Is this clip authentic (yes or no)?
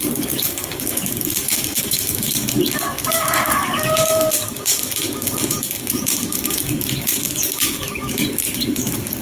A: no